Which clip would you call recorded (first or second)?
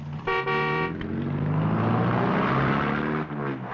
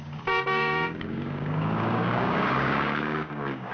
first